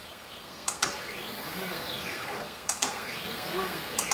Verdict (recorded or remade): remade